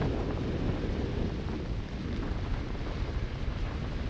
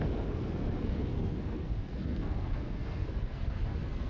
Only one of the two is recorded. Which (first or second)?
first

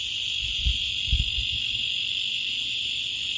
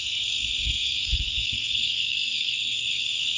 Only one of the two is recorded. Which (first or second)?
first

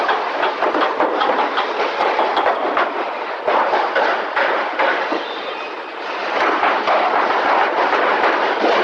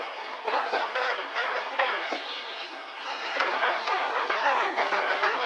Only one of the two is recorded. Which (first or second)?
first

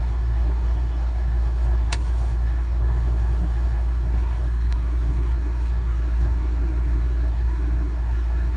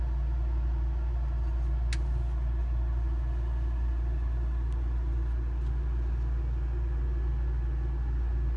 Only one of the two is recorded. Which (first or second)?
second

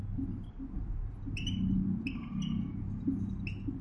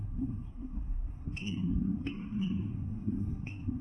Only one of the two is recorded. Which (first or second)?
first